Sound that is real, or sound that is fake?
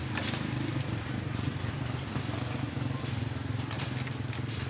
real